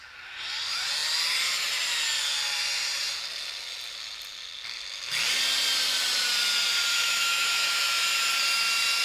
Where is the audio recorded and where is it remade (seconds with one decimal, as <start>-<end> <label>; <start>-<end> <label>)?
0.0-6.9 recorded; 6.9-7.8 remade; 7.8-9.0 recorded